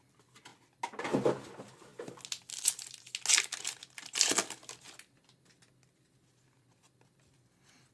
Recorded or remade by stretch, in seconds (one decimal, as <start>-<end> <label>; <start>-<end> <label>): 0.0-7.9 recorded

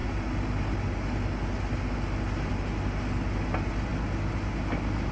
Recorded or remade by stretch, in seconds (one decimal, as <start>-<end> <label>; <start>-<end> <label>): 0.0-5.1 recorded

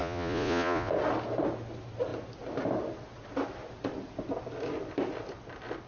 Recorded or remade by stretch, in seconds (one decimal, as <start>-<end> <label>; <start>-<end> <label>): 0.0-0.9 remade; 0.9-5.9 recorded

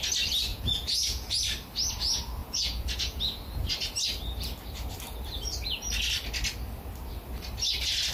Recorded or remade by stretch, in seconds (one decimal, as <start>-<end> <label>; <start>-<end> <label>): 0.0-0.5 recorded; 0.5-1.4 remade; 1.4-2.4 recorded; 2.4-3.2 remade; 3.2-8.1 recorded

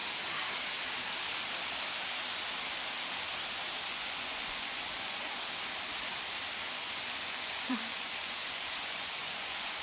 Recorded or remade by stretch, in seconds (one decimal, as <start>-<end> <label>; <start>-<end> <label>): 0.0-3.9 recorded; 3.9-5.4 remade; 5.4-6.6 recorded; 6.6-9.8 remade

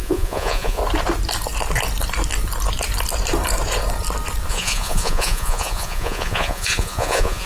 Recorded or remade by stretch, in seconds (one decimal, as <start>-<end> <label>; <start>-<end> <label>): 0.0-0.8 remade; 0.8-4.5 recorded; 4.5-7.5 remade